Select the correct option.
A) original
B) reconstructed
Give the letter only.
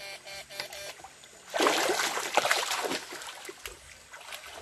A